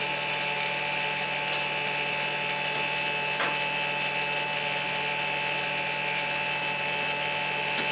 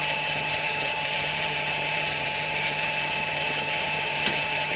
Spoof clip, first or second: second